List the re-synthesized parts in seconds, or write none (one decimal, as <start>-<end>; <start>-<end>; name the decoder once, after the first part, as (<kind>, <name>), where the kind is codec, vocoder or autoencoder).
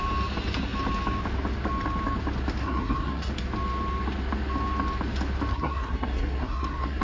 2.6-3.3 (codec, SNAC); 5.5-7.0